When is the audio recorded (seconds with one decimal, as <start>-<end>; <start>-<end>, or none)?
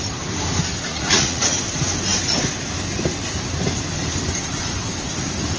0.0-0.9; 1.6-5.6